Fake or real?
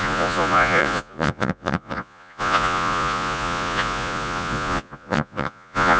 fake